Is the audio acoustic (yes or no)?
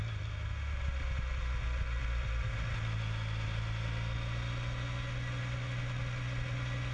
yes